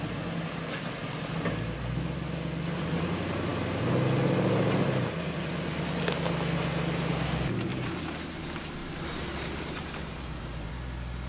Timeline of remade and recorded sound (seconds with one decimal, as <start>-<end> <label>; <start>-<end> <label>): 0.0-8.8 recorded; 8.8-10.7 remade; 10.7-11.3 recorded